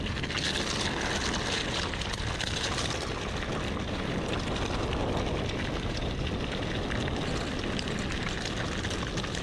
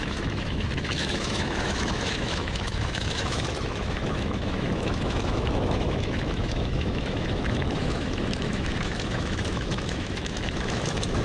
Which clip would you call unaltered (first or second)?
first